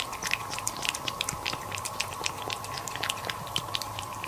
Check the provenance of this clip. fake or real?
fake